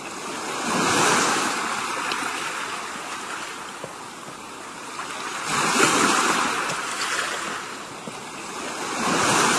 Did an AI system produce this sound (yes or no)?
no